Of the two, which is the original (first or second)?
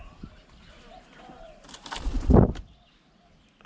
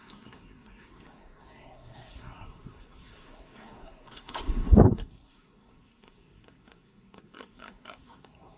first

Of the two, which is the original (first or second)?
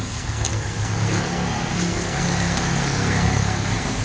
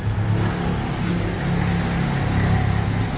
second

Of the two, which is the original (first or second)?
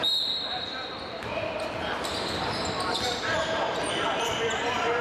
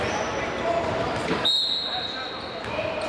second